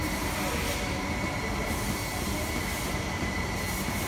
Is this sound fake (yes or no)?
no